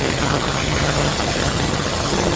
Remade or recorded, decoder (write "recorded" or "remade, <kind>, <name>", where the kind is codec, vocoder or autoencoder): remade, vocoder, HiFi-GAN